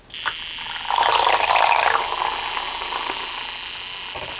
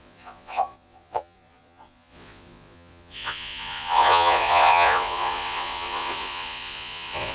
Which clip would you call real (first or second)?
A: first